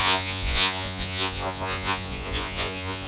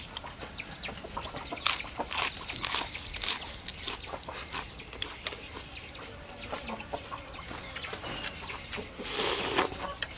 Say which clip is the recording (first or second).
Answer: second